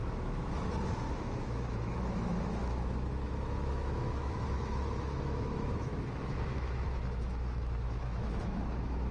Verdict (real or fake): fake